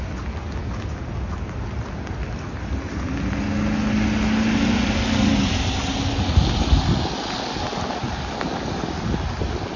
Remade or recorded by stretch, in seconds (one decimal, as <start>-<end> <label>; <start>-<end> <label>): 0.0-9.8 recorded